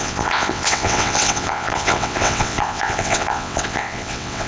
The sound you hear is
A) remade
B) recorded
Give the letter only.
A